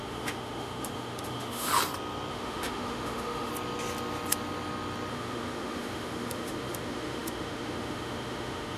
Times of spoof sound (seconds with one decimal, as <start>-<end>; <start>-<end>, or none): 0.0-1.7; 2.3-3.5; 5.1-8.8